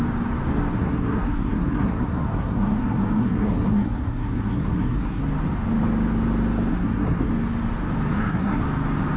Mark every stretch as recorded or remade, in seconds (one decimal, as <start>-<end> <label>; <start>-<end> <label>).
0.0-0.7 recorded; 0.7-5.2 remade; 5.2-6.7 recorded; 6.7-7.3 remade; 7.3-8.1 recorded; 8.1-8.6 remade; 8.6-9.2 recorded